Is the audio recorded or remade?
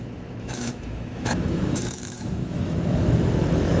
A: remade